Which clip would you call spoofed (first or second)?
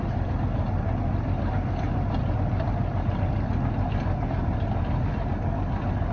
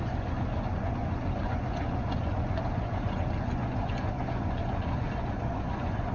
second